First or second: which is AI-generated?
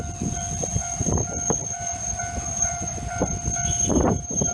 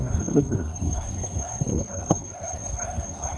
second